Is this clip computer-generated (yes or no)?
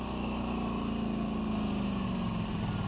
no